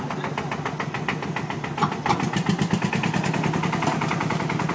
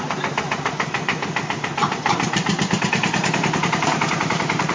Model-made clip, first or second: second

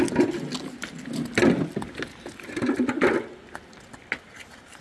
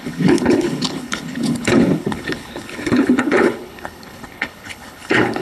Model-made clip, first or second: second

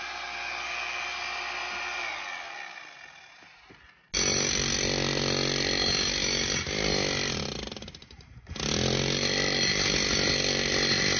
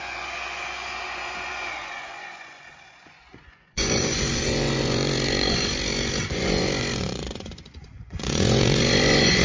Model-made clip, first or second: second